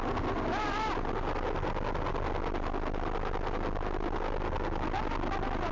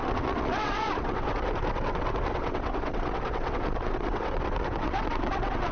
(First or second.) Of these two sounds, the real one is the first